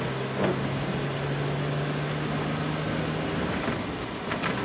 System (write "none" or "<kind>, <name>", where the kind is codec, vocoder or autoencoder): none